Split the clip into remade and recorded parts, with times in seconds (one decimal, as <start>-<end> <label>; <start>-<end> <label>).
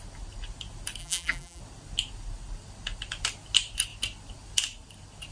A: 0.0-1.0 recorded; 1.0-1.6 remade; 1.6-5.3 recorded